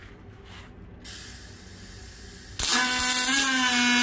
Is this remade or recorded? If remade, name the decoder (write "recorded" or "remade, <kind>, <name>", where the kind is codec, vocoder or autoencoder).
recorded